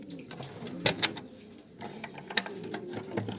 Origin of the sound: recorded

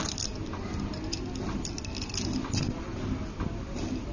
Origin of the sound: recorded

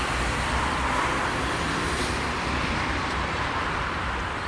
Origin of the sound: remade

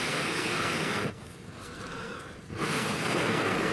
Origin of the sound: remade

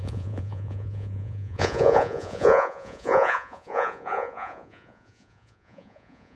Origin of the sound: remade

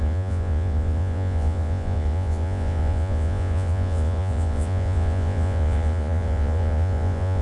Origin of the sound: remade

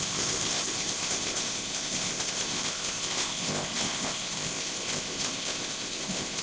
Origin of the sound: remade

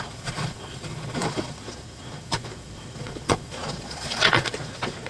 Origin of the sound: remade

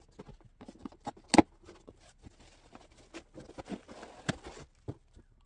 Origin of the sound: recorded